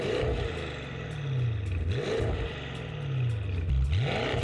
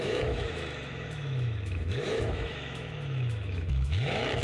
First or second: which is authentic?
first